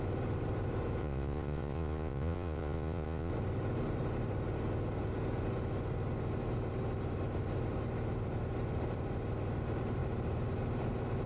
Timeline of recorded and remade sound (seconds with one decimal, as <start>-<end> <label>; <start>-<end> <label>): 0.0-1.0 recorded; 1.0-3.3 remade; 3.3-11.3 recorded